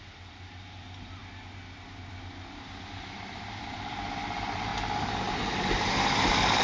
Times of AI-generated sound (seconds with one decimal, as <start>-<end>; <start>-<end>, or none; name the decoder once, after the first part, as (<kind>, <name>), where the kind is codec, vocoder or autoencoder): 0.0-1.2 (vocoder, BigVGAN v2); 2.6-4.7; 5.7-6.6